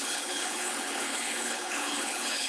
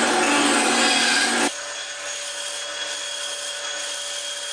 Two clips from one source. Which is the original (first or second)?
second